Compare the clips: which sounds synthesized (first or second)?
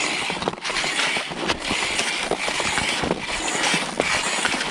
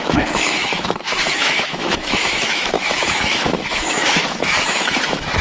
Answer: second